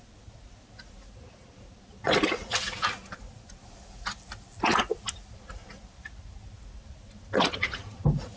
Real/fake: real